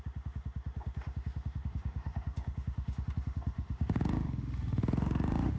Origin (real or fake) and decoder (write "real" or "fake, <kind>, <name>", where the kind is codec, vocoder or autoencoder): fake, autoencoder, DAC-VAE